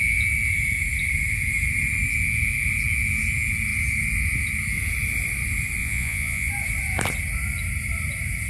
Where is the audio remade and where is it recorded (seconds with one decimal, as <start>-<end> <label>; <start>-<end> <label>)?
0.0-5.8 recorded; 5.8-6.5 remade; 6.5-8.5 recorded